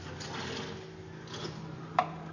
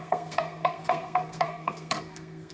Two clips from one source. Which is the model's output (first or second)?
second